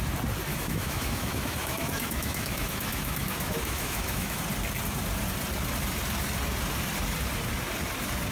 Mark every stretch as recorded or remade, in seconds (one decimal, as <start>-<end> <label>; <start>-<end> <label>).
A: 0.0-0.5 recorded; 0.5-4.4 remade; 4.4-8.3 recorded